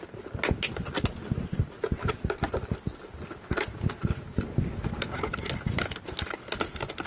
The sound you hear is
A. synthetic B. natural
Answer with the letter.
B